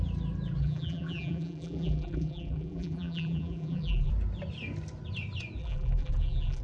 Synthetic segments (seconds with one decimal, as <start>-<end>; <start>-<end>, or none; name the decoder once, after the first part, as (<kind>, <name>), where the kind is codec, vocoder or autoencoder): 0.6-4.1 (vocoder, BigVGAN v2); 5.6-6.6